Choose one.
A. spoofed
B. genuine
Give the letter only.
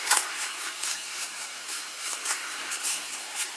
A